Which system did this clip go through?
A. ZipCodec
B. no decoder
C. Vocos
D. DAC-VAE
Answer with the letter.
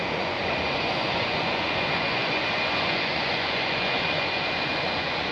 C